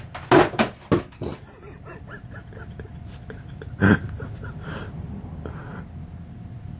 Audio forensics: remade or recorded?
recorded